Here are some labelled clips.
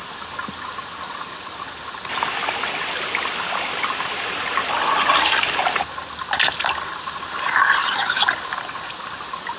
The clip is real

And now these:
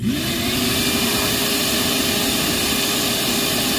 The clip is real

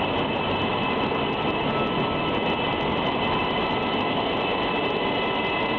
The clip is real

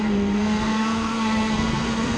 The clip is fake